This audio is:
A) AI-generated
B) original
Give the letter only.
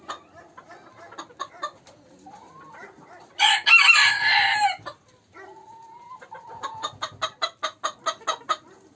B